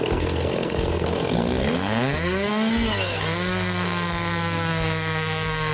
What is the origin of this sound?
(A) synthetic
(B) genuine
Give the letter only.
A